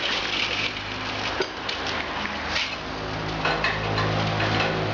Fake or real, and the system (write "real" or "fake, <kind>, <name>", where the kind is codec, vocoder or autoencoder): real